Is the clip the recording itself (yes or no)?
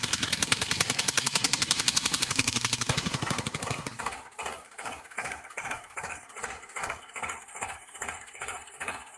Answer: no